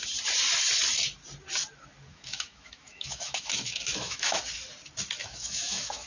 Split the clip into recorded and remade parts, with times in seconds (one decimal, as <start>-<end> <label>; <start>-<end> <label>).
0.0-2.1 recorded; 2.1-4.4 remade; 4.4-5.2 recorded; 5.2-6.1 remade